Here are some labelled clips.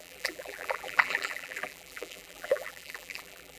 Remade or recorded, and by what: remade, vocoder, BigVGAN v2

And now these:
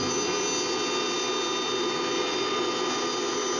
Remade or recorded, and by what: recorded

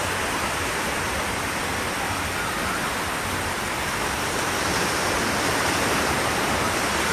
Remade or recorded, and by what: recorded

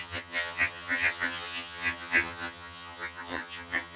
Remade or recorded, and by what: remade, vocoder, HiFi-GAN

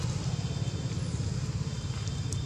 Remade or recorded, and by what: recorded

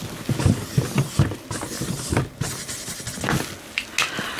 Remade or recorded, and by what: recorded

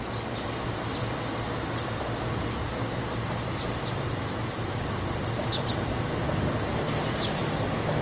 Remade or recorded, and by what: recorded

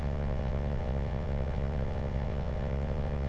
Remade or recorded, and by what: remade, vocoder, WaveNeXt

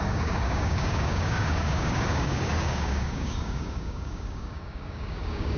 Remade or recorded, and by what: remade, codec, DAC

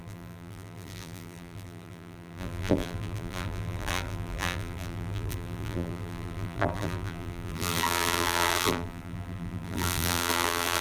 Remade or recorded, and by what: remade, vocoder, BigVGAN v2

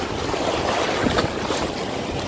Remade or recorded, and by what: recorded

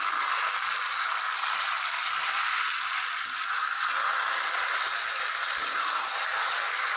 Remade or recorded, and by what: recorded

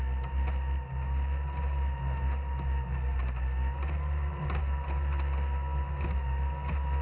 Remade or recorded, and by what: recorded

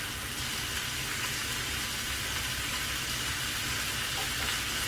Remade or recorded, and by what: recorded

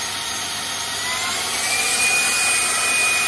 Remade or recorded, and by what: recorded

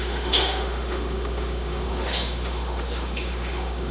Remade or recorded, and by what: remade, autoencoder, DAC-VAE